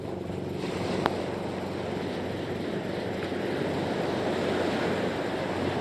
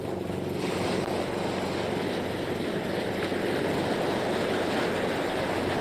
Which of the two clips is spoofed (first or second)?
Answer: first